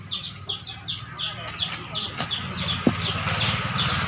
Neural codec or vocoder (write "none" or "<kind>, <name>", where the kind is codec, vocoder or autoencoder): none